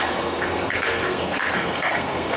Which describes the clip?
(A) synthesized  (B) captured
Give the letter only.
A